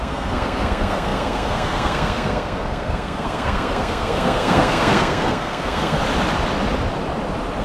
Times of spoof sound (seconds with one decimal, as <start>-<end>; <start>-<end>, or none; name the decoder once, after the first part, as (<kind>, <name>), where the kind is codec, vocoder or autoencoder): 0.0-6.0 (codec, SNAC)